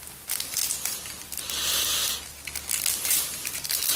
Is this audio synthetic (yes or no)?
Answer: no